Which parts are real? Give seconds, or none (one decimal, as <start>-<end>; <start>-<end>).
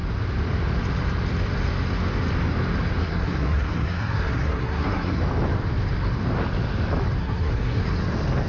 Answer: 0.0-3.0; 5.2-7.2; 7.8-8.5